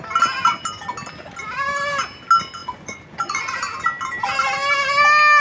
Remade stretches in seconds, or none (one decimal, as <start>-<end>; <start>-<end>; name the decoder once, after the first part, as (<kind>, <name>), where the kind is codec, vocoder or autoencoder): 2.6-3.6 (vocoder, Vocos)